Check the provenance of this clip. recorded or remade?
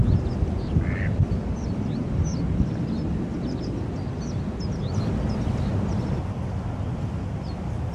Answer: recorded